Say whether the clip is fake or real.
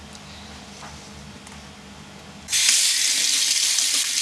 real